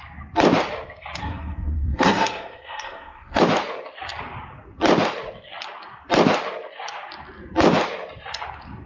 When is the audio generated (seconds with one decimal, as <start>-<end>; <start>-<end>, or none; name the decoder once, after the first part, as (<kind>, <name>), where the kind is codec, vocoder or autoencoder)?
1.2-3.4 (codec, SNAC)